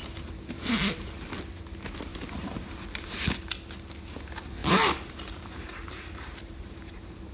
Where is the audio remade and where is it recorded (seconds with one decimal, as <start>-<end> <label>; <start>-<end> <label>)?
0.0-0.7 remade; 0.7-2.1 recorded; 2.1-2.7 remade; 2.7-4.6 recorded; 4.6-7.3 remade